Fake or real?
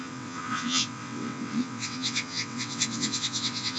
fake